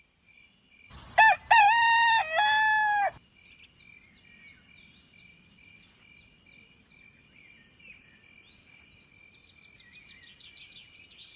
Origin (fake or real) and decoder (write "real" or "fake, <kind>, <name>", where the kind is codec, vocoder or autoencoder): real